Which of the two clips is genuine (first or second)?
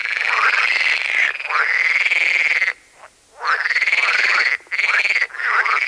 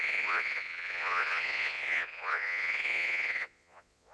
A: first